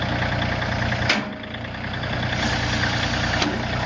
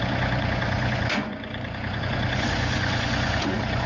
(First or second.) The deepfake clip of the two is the second